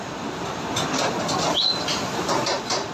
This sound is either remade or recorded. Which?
recorded